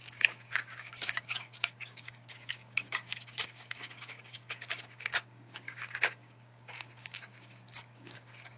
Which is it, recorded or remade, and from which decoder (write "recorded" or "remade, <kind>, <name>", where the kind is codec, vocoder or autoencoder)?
remade, codec, DAC